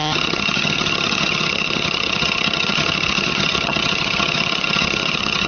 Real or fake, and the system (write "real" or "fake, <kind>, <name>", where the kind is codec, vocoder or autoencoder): fake, vocoder, HiFi-GAN